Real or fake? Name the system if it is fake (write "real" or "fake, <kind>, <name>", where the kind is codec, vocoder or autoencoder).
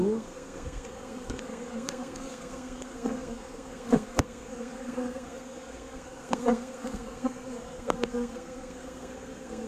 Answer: fake, codec, SNAC